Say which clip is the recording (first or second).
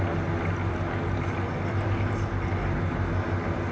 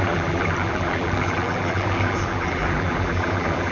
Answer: first